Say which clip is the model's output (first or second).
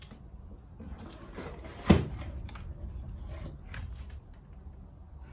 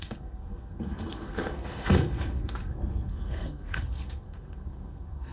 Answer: second